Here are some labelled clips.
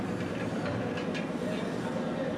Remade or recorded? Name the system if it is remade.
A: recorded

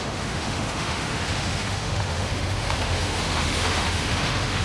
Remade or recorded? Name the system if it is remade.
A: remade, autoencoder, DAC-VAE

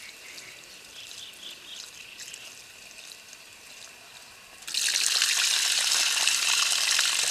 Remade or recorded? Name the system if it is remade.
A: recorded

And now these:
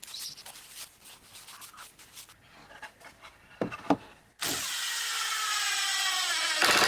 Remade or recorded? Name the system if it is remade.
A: recorded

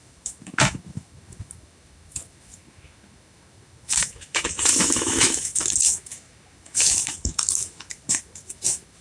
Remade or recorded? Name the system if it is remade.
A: remade, autoencoder, DAC-VAE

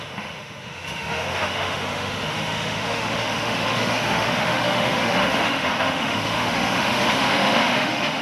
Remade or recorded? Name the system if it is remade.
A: remade, autoencoder, DAC-VAE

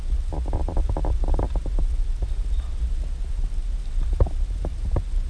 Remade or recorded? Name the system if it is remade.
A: recorded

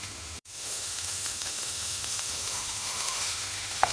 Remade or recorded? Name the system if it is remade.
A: remade, autoencoder, DAC-VAE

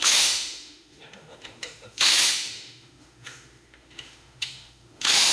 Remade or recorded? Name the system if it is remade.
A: remade, autoencoder, DAC-VAE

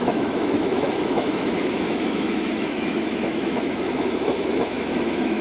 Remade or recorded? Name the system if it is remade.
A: remade, autoencoder, DAC-VAE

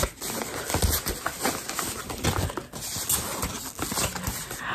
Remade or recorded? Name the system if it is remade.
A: recorded